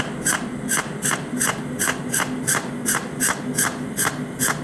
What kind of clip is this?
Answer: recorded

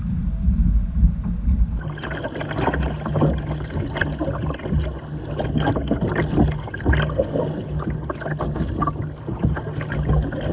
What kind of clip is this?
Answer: recorded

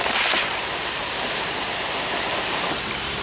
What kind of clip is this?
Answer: remade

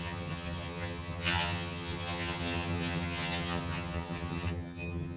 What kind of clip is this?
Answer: remade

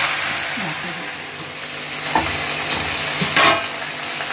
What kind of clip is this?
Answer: recorded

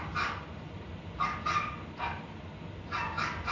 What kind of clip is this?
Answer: recorded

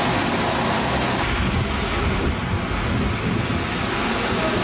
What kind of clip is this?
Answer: recorded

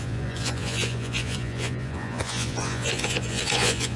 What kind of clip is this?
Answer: remade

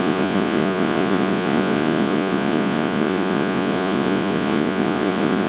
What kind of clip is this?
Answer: remade